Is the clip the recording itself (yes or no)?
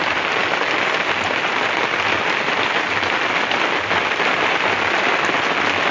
yes